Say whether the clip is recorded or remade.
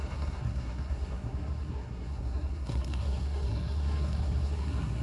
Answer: remade